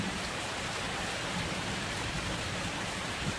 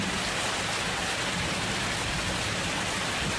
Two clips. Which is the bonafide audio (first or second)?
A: second